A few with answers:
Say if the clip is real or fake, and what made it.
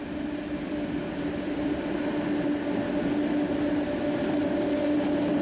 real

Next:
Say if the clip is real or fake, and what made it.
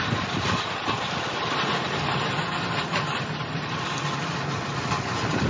real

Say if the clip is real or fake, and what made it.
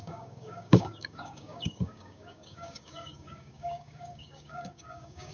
fake, codec, DAC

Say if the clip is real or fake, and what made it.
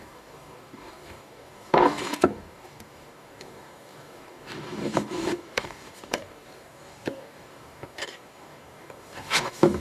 fake, codec, DAC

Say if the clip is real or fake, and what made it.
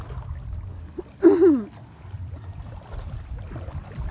real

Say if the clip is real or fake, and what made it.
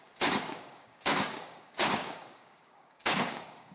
fake, codec, DAC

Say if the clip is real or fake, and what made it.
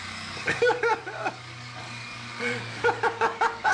fake, codec, DAC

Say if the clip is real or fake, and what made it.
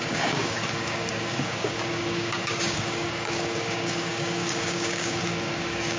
fake, codec, DAC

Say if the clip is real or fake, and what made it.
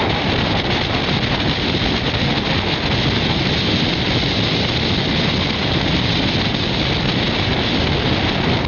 real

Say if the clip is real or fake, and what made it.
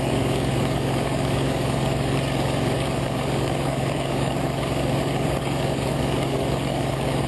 fake, codec, DAC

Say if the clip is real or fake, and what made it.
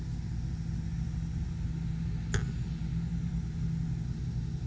real